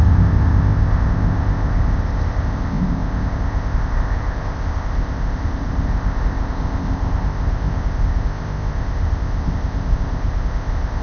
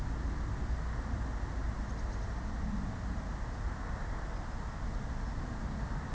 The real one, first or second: second